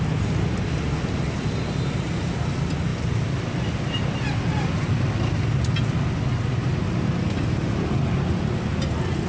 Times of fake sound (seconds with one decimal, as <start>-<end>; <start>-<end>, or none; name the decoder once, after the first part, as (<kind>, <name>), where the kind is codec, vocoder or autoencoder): none